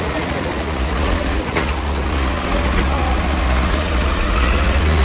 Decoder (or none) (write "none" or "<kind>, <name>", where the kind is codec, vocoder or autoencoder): vocoder, Vocos